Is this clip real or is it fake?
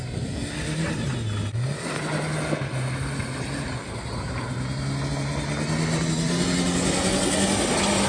real